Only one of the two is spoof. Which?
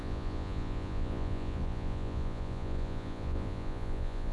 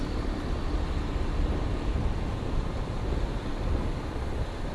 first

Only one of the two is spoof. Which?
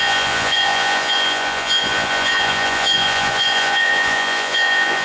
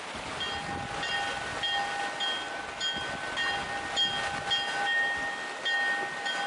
first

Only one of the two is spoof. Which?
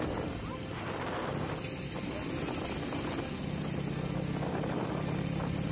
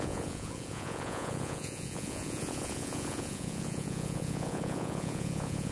second